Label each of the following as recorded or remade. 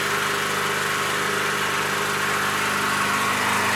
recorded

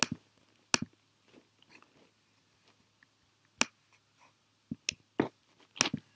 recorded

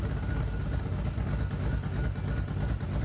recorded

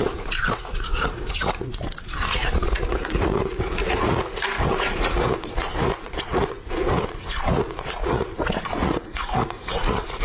remade